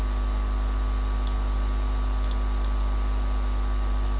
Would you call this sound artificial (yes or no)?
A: no